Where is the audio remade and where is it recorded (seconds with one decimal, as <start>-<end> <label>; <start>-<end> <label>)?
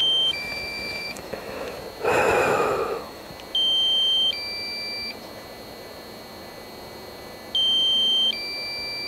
0.0-1.7 remade; 1.7-2.1 recorded; 2.1-3.3 remade; 3.3-9.1 recorded